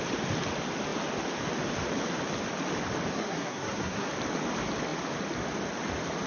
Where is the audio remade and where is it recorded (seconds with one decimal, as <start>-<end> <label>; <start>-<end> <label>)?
0.0-3.1 recorded; 3.1-4.1 remade; 4.1-6.3 recorded